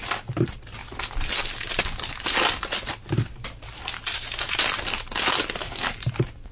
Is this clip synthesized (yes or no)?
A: no